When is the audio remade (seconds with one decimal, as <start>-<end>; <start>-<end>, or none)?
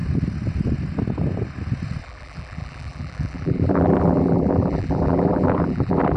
2.0-6.2